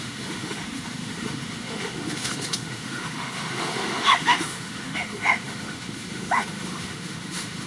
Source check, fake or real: fake